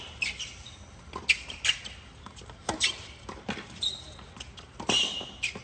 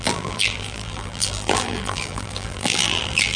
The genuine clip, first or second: first